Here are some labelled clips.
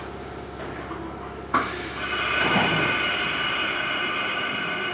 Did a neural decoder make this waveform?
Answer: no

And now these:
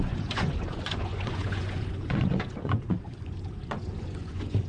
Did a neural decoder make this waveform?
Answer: yes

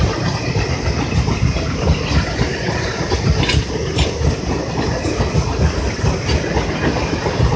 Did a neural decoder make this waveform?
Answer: no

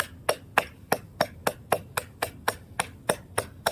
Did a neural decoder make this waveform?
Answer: no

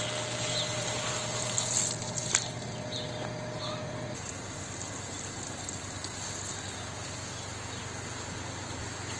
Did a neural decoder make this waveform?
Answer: no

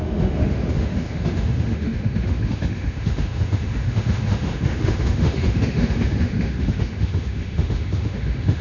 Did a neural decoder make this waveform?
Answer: yes